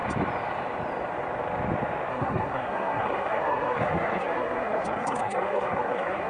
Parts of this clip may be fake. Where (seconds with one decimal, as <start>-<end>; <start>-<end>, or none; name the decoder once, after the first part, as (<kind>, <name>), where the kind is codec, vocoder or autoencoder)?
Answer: 2.1-6.3 (codec, SNAC)